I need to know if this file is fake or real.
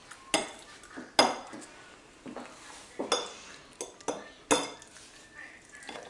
real